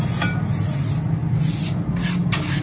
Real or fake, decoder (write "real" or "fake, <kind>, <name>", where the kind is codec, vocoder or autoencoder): real